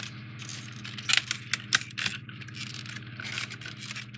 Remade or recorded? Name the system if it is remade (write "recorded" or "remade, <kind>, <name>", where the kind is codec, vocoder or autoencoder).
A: recorded